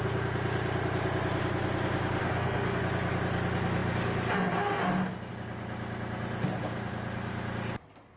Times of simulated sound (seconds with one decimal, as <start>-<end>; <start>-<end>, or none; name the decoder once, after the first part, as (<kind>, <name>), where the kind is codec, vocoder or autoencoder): 2.2-2.8 (codec, SNAC)